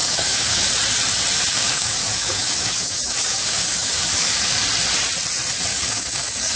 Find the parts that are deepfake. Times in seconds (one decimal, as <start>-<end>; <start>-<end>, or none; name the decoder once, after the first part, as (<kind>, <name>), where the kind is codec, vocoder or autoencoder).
0.0-0.7 (codec, DAC); 1.5-4.6; 5.7-6.6